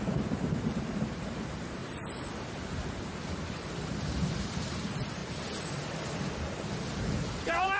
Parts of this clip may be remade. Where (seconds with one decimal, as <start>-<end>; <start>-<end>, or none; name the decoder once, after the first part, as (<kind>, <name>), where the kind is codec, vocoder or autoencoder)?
0.0-5.2 (vocoder, BigVGAN v2); 6.5-7.8